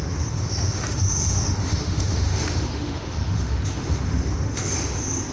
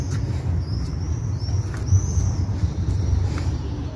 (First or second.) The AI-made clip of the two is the first